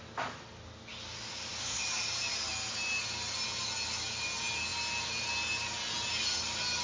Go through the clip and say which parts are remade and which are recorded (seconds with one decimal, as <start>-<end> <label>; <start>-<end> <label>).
0.0-1.5 recorded; 1.5-2.5 remade; 2.5-6.8 recorded